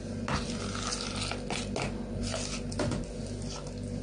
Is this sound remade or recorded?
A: recorded